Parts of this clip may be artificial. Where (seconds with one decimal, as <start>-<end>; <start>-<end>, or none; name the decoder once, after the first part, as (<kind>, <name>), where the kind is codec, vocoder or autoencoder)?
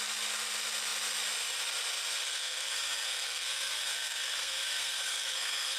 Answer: 2.2-5.8 (codec, SNAC)